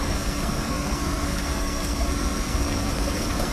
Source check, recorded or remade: remade